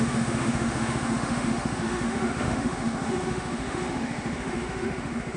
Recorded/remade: remade